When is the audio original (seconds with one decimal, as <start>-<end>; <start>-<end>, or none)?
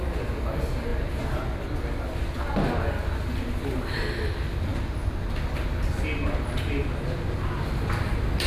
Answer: 0.0-8.5